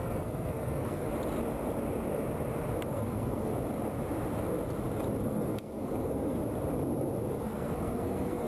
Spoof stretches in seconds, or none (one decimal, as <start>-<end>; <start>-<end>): 0.0-1.1; 2.9-3.5; 5.2-6.4; 7.4-8.5